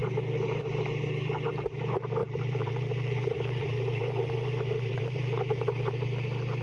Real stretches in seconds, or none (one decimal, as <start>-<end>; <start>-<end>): 0.0-2.2; 5.5-6.6